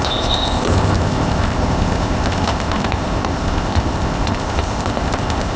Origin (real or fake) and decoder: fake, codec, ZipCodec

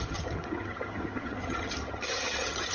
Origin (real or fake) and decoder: fake, vocoder, HiFi-GAN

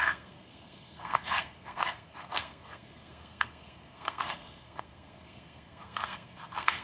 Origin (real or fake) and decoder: fake, codec, SNAC